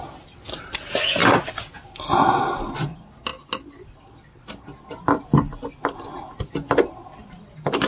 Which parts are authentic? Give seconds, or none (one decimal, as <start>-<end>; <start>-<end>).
0.0-7.9